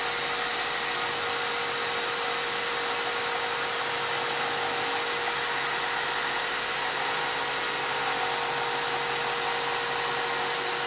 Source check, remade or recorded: recorded